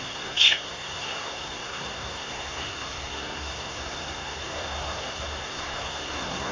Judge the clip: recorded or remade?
remade